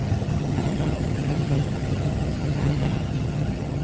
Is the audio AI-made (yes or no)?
yes